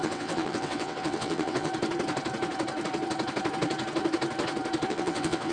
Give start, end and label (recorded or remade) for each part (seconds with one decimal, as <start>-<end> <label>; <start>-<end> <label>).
0.0-1.7 remade; 1.7-4.9 recorded; 4.9-5.5 remade